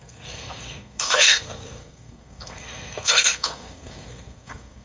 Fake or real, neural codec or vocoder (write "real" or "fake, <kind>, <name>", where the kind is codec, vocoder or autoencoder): fake, codec, SNAC